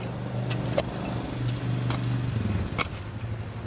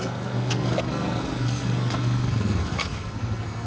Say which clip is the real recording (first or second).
first